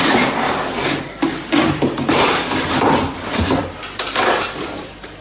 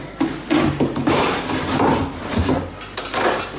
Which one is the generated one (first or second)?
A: first